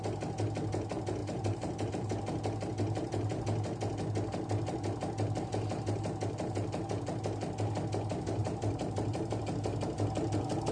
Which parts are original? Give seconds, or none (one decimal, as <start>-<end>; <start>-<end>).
0.0-1.2; 1.9-8.4; 9.4-10.7